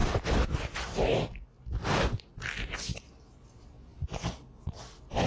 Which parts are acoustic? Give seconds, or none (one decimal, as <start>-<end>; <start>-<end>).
0.0-3.2